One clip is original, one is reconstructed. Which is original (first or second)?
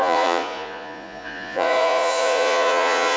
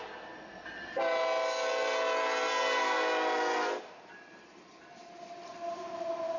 second